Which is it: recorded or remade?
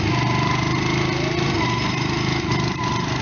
recorded